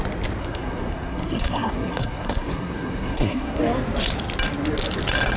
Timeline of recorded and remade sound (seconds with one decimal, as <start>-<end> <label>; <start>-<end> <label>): 0.0-0.4 recorded; 0.4-3.6 remade; 3.6-5.4 recorded